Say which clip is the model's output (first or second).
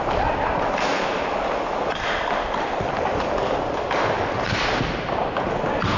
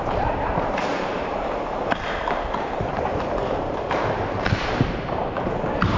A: second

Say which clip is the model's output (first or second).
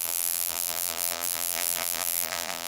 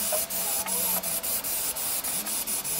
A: first